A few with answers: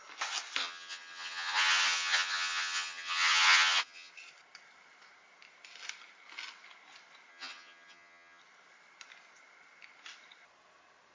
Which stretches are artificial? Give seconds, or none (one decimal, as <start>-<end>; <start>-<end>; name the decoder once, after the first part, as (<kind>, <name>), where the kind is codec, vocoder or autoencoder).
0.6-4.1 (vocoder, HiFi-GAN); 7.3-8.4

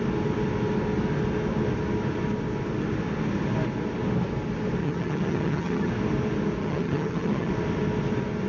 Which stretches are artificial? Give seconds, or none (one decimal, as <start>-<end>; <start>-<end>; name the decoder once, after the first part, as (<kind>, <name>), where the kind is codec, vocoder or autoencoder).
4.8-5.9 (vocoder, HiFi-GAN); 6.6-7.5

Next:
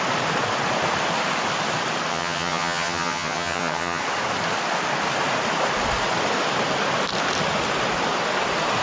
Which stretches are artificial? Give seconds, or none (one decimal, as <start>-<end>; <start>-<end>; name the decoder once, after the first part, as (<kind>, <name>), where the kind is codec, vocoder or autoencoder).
2.1-4.0 (vocoder, HiFi-GAN)

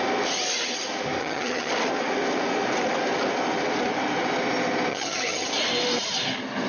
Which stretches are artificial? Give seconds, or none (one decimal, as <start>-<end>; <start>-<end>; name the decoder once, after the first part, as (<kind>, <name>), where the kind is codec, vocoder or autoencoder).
1.2-1.7 (vocoder, HiFi-GAN); 4.9-5.5

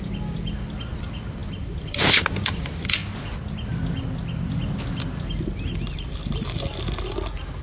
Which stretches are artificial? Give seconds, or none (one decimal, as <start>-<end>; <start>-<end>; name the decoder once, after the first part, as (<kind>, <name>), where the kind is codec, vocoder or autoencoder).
none